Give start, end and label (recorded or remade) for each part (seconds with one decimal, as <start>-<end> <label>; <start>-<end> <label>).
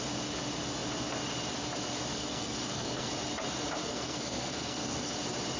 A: 0.0-2.1 recorded; 2.1-3.1 remade; 3.1-3.8 recorded; 3.8-5.1 remade; 5.1-5.6 recorded